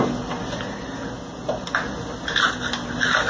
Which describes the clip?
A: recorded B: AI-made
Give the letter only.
A